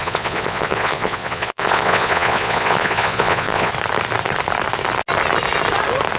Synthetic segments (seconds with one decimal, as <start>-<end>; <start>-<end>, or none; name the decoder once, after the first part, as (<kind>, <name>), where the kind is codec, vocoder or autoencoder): 0.0-3.7 (vocoder, Vocos)